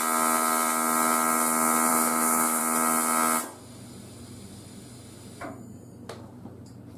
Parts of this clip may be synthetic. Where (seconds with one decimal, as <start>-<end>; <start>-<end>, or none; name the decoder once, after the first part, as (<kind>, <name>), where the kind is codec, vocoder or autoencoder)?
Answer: 1.9-2.6 (autoencoder, DAC-VAE)